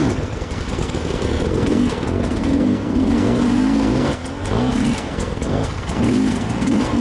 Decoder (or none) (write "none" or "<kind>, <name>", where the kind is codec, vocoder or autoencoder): codec, SNAC